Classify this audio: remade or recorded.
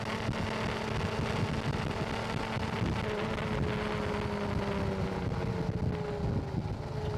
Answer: recorded